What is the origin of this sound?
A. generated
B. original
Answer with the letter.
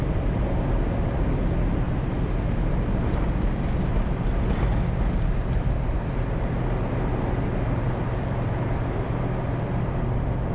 A